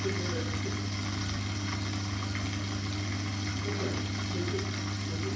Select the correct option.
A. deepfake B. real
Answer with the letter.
B